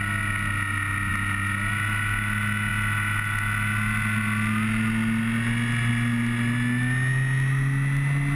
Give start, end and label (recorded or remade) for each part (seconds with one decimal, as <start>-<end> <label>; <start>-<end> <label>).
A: 0.0-8.4 recorded